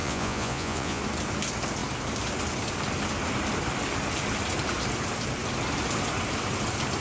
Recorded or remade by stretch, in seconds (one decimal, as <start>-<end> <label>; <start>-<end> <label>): 0.0-1.0 remade; 1.0-7.0 recorded